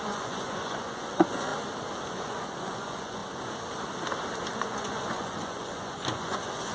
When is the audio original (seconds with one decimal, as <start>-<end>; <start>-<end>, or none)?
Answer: 1.5-2.1; 3.2-4.5